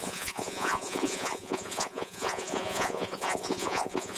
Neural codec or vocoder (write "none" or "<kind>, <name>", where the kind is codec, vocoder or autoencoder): vocoder, Vocos